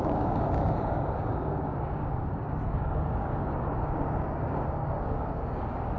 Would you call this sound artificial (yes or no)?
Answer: yes